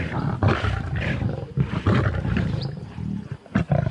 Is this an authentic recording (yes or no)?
no